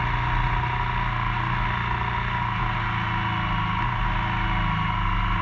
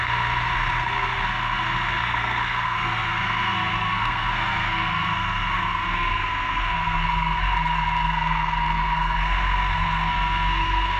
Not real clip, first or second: second